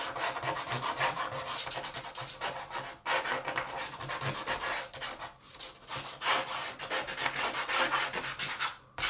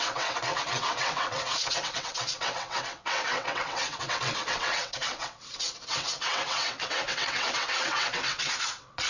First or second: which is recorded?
first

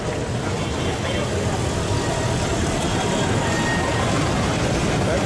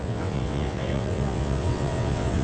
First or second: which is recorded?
first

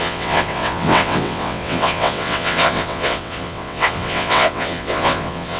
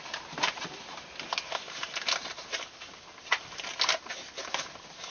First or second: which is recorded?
second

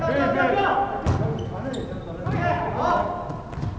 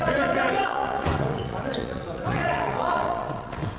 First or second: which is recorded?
first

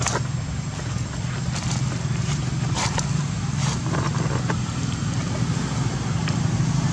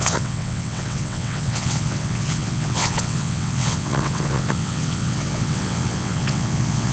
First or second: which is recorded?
first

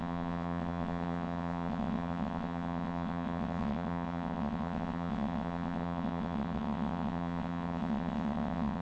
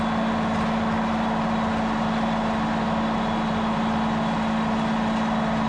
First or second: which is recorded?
second